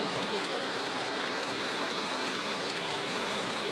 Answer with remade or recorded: remade